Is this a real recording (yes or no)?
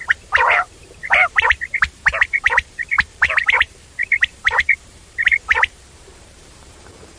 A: no